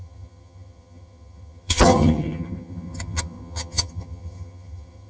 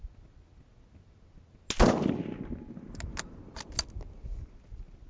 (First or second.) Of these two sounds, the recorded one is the second